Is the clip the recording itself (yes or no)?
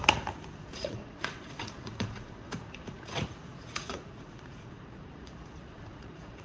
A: no